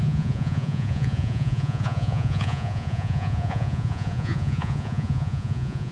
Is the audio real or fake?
fake